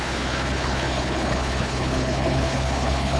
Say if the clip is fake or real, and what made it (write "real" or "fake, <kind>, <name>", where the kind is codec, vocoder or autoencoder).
fake, codec, HILCodec